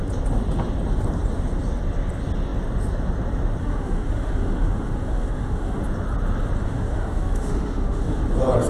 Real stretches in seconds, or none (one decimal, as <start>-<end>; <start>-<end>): 0.0-3.6; 5.8-6.6; 8.2-8.7